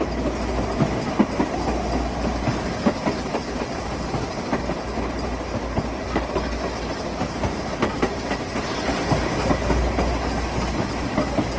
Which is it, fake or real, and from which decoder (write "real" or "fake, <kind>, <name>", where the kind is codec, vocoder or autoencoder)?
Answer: real